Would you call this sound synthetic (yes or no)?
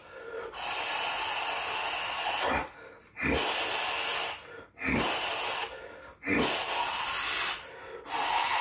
no